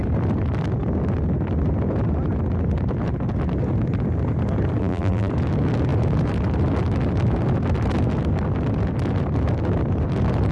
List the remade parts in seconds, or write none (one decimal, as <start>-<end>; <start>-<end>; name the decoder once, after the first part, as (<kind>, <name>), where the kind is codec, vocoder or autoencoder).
4.8-5.3 (vocoder, BigVGAN v2)